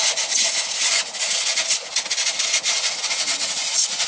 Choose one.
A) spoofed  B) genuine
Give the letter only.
A